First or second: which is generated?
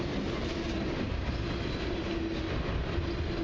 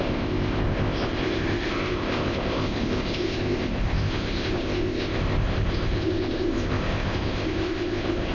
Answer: second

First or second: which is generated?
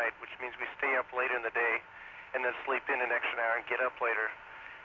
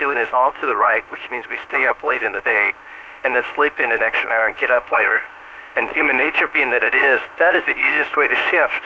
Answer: second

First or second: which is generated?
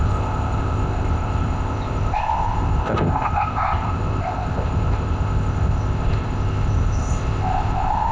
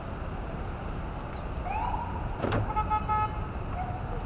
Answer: first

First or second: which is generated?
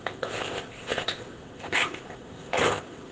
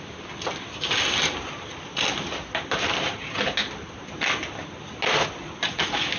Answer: first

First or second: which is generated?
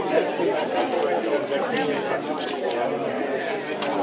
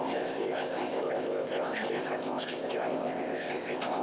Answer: second